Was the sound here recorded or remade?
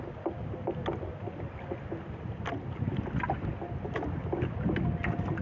recorded